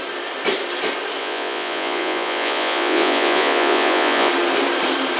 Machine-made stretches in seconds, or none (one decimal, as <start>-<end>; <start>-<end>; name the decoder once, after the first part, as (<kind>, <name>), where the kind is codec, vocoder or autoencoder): 1.2-4.3 (vocoder, Vocos)